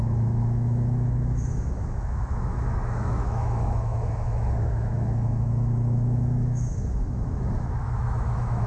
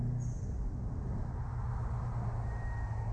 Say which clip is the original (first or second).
second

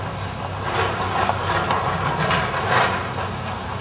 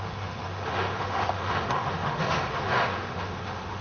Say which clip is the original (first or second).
first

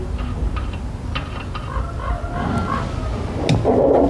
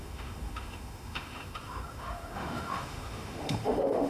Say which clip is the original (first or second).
first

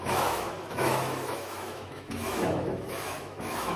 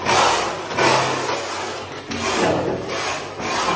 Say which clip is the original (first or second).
second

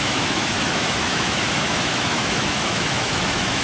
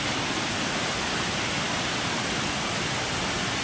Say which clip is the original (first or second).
second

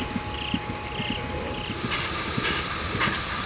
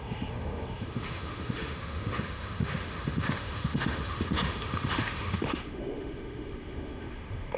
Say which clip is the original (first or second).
first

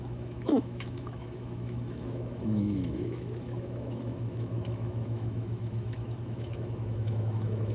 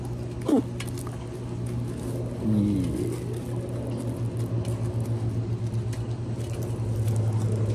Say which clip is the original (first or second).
second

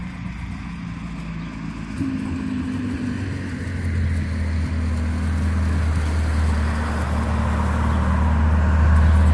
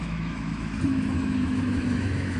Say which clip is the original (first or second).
first